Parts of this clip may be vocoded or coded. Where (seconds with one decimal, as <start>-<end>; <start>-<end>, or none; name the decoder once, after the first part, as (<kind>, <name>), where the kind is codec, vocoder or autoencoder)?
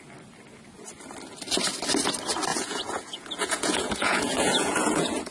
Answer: 2.5-5.3 (vocoder, Vocos)